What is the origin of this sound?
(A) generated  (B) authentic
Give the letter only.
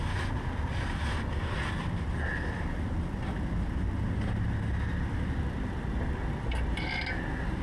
B